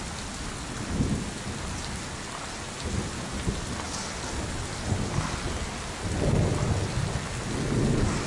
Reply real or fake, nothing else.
real